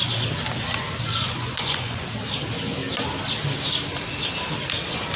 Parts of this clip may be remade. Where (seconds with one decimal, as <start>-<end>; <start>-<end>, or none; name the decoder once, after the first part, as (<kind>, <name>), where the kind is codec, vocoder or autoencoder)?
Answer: 1.1-2.1 (vocoder, Vocos)